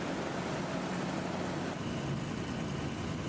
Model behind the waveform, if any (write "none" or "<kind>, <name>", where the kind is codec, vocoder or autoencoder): none